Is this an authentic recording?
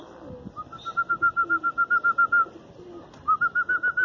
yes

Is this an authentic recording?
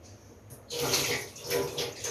yes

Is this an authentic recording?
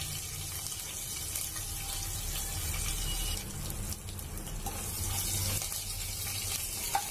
yes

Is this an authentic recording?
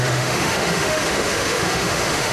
no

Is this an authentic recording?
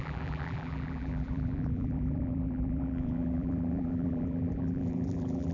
no